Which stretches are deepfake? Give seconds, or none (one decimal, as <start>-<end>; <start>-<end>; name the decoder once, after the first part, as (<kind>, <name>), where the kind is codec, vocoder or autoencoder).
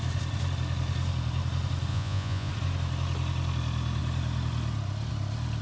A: 1.9-2.5 (vocoder, Vocos)